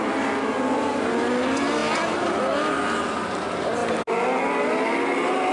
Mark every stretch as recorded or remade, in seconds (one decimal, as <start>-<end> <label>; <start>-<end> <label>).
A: 0.0-5.5 recorded